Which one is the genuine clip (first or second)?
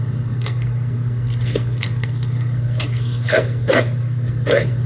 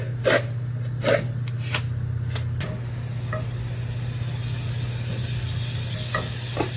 second